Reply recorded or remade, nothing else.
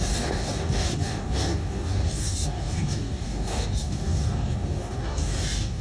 remade